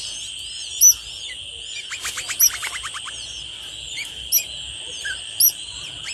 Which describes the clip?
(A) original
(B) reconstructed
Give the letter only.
A